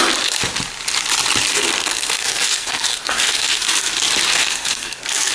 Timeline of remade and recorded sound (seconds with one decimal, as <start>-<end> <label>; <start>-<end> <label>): 0.0-1.5 recorded; 1.5-3.9 remade; 3.9-4.4 recorded; 4.4-5.3 remade